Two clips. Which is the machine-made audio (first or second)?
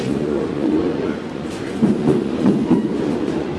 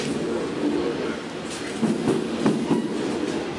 first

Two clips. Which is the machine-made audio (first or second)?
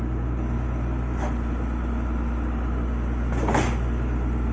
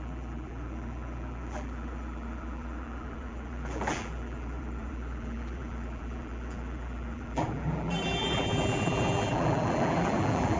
second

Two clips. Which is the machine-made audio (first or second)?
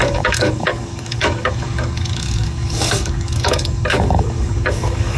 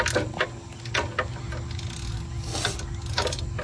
first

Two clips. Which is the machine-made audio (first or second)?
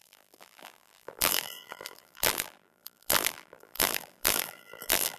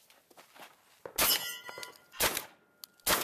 first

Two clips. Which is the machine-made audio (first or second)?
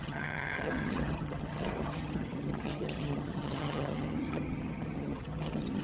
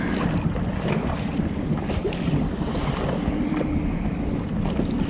first